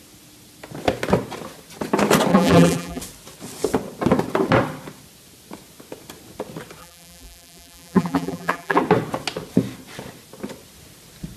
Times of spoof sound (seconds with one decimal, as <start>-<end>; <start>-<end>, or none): 2.3-3.0; 6.8-8.8